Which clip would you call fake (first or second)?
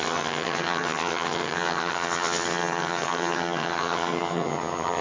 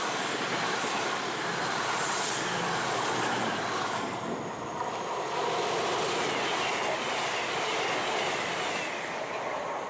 first